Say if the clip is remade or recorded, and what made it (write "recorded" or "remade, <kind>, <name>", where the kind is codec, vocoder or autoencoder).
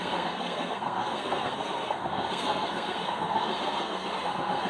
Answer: remade, codec, SNAC